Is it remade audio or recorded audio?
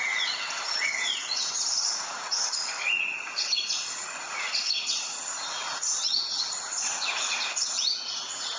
remade